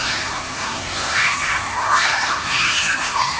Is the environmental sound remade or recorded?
remade